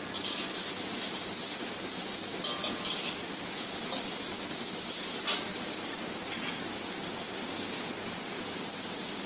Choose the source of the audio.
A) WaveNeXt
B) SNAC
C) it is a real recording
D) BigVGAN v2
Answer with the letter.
C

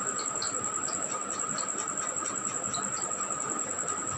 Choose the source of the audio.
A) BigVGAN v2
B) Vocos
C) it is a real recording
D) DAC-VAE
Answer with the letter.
C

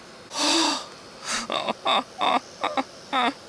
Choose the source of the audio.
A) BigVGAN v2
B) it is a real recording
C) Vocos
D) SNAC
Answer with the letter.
B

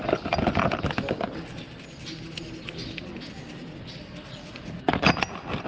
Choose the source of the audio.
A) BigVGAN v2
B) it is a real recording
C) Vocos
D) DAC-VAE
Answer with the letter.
B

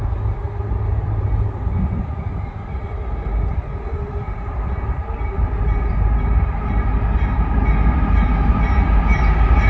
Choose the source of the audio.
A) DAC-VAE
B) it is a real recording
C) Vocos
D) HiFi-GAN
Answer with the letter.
B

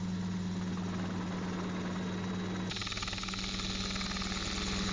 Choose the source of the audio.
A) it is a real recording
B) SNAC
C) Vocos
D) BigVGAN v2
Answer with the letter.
A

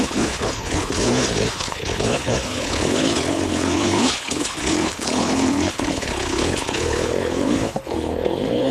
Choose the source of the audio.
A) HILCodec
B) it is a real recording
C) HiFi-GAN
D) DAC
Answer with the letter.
A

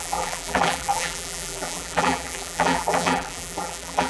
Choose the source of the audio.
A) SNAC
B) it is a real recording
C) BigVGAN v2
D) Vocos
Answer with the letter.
C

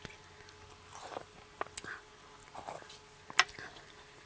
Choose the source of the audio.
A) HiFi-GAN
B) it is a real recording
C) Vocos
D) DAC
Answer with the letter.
B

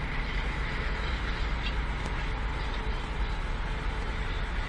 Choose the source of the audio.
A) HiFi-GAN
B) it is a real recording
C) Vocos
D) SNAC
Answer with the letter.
B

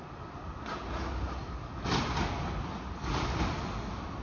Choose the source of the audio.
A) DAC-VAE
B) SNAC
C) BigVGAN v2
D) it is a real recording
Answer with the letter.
D